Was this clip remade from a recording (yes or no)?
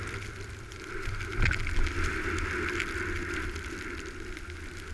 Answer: no